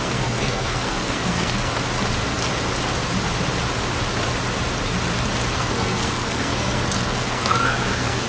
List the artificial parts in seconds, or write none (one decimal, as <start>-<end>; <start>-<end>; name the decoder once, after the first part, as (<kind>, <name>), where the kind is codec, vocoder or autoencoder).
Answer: 0.0-1.7 (codec, SNAC); 5.5-8.3